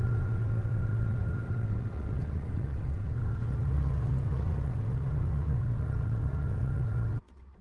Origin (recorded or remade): remade